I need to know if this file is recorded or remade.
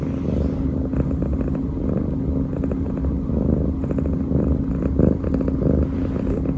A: recorded